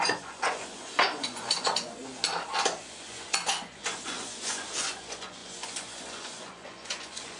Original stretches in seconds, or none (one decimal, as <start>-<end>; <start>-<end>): 2.0-2.8